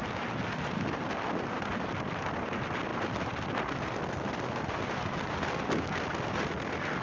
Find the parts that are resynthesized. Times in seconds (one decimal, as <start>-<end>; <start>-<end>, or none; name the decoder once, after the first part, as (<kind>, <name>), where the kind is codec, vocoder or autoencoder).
none